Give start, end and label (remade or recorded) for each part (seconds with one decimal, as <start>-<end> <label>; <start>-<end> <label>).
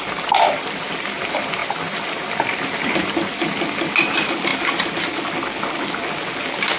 0.0-6.8 recorded